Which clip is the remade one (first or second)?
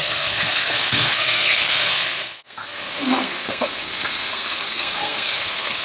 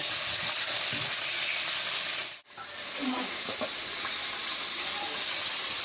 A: first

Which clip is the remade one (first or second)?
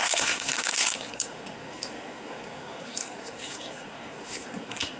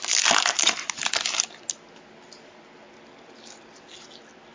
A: first